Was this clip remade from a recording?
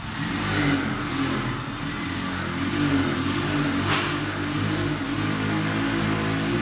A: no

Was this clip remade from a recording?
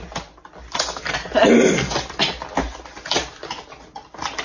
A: no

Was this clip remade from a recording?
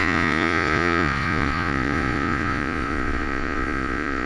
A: yes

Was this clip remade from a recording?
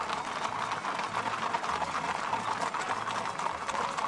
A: no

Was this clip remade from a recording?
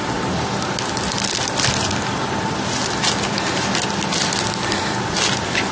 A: no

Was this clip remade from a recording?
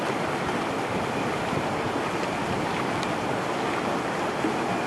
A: no